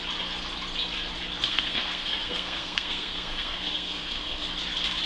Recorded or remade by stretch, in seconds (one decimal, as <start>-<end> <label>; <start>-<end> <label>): 0.0-1.5 recorded; 1.5-4.5 remade; 4.5-5.1 recorded